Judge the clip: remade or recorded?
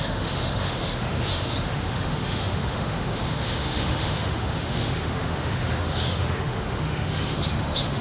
remade